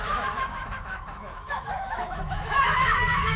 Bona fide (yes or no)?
no